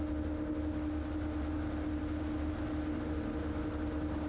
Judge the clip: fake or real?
real